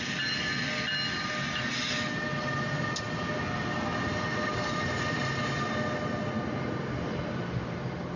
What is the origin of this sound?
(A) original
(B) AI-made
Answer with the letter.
A